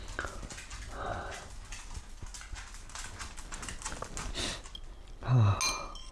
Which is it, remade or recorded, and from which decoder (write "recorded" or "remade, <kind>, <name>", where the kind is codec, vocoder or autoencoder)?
recorded